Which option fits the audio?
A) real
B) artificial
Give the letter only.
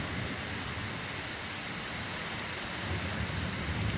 A